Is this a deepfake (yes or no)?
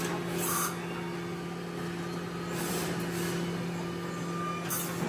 no